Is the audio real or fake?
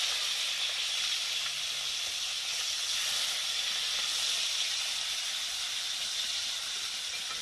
real